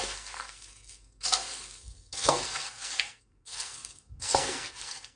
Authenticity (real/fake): fake